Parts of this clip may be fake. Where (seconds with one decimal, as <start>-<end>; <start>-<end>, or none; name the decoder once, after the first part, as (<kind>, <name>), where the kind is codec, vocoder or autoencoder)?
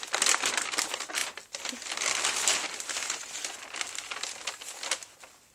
none